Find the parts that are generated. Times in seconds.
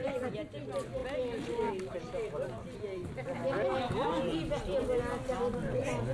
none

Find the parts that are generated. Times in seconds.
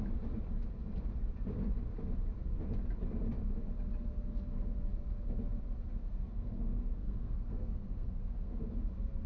6.0-8.6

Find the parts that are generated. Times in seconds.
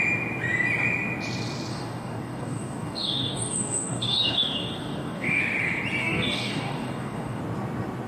1.7-5.4; 6.0-7.4